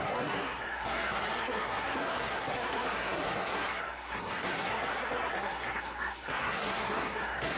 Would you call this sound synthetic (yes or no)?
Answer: yes